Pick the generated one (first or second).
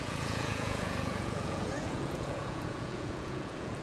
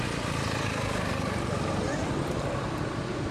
first